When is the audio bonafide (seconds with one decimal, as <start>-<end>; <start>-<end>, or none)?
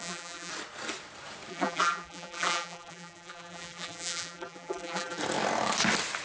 0.5-1.5; 5.2-6.2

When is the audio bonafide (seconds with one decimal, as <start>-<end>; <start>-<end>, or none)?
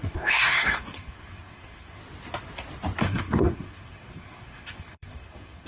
2.0-3.0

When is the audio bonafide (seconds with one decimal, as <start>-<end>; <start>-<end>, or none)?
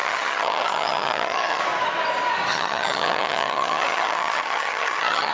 1.6-2.5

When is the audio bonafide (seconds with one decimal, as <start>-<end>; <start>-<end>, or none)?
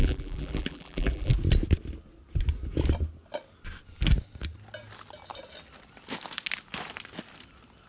1.3-7.9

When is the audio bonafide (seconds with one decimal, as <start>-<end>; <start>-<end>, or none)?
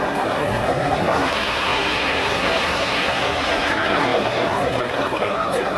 none